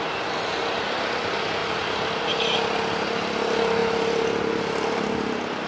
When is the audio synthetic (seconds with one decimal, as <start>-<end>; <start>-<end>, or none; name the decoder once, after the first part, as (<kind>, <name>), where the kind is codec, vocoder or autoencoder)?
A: 1.6-2.2 (vocoder, BigVGAN v2)